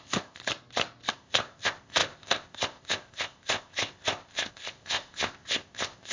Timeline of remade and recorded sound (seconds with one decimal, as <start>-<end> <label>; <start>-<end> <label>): 0.0-0.4 remade; 0.4-1.1 recorded; 1.1-6.1 remade